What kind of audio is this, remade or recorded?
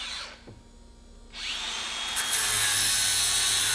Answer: recorded